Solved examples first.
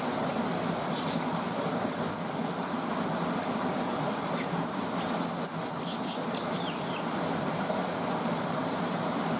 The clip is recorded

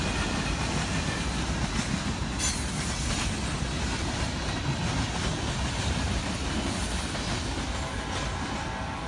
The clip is recorded